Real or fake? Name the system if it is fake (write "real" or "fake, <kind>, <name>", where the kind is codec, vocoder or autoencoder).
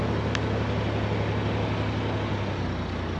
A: real